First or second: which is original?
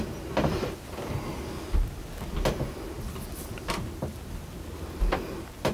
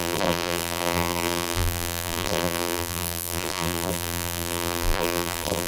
first